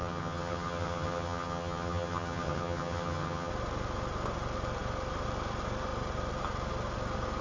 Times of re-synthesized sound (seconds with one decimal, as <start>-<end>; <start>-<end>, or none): 0.0-3.5